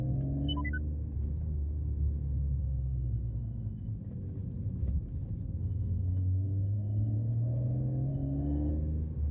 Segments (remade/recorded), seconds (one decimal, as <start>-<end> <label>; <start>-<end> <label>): 0.0-2.6 recorded; 2.6-3.9 remade; 3.9-5.6 recorded; 5.6-7.3 remade; 7.3-8.1 recorded; 8.1-8.7 remade; 8.7-9.3 recorded